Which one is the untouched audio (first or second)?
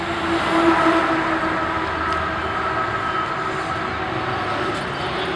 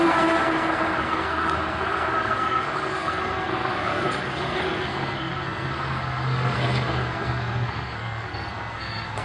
first